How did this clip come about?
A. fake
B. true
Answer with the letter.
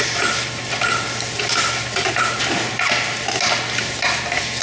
B